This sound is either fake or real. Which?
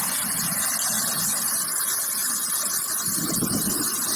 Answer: real